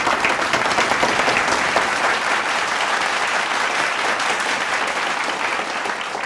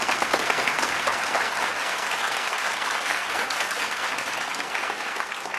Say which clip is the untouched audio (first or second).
first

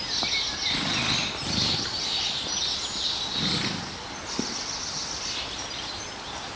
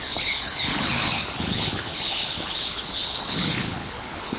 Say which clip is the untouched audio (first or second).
first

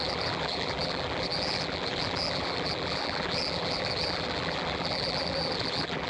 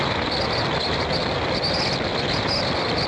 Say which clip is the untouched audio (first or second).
second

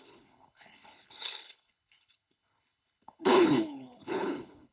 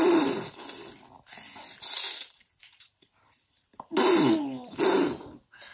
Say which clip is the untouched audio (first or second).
second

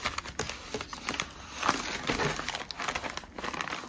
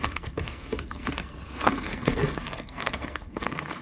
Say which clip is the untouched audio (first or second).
first